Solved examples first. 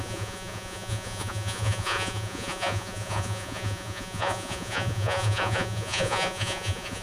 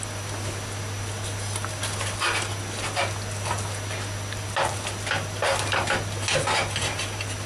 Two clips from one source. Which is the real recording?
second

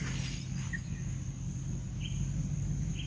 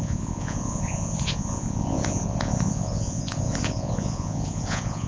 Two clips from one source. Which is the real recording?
first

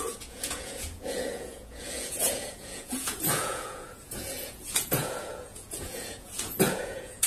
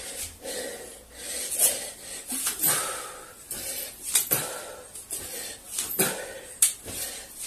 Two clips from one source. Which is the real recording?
second